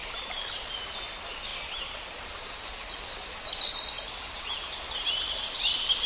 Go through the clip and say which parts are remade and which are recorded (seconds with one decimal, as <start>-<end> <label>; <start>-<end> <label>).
0.0-0.5 remade; 0.5-6.1 recorded